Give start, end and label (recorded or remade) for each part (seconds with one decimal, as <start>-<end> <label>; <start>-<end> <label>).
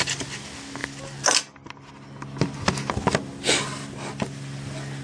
0.0-5.0 recorded